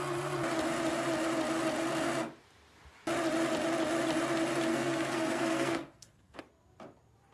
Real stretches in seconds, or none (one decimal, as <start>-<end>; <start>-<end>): 0.0-4.7; 6.4-7.3